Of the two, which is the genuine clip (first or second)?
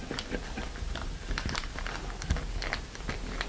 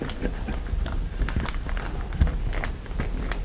first